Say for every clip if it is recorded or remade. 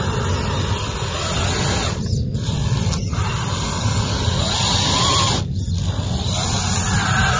recorded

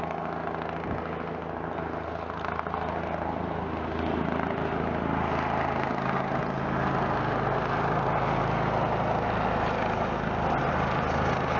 recorded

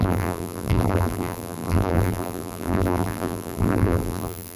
remade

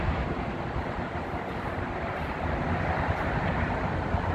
remade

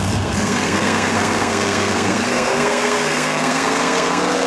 remade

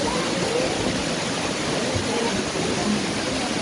recorded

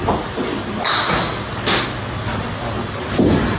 recorded